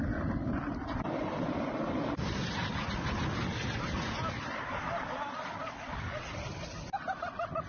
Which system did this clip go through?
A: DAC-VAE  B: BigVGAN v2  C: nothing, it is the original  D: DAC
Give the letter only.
C